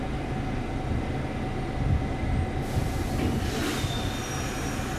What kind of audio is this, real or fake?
real